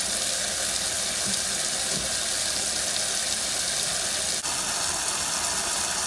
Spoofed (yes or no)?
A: no